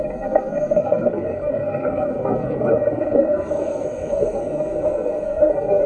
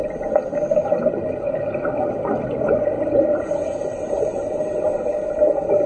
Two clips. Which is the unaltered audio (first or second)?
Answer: second